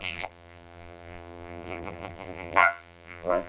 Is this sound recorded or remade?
remade